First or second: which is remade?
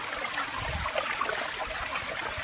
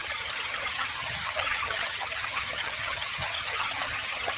second